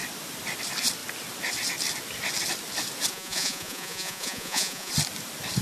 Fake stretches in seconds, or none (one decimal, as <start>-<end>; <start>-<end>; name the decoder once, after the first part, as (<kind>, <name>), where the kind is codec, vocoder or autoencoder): 3.1-4.9 (vocoder, Vocos)